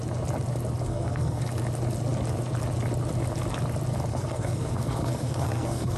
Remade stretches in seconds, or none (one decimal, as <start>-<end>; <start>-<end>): 0.8-1.4; 4.1-6.0